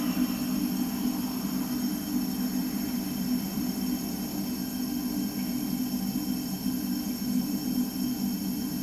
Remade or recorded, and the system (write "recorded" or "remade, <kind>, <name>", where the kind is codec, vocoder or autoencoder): recorded